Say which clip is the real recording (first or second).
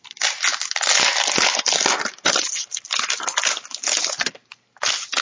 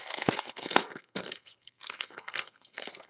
first